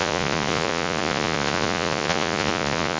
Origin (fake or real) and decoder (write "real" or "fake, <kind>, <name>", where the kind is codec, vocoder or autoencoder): fake, vocoder, Vocos